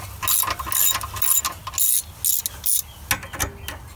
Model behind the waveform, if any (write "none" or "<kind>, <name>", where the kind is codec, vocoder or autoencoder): none